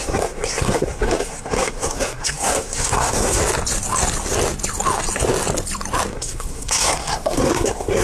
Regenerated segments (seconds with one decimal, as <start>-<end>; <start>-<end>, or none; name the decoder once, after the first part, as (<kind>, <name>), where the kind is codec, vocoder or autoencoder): 0.0-3.4 (codec, SNAC); 6.1-8.0